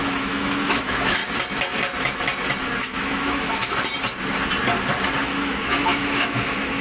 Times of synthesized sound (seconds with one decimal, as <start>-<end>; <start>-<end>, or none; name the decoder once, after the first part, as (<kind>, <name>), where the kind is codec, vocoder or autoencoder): 0.0-1.2 (autoencoder, DAC-VAE); 2.8-3.6; 5.2-6.8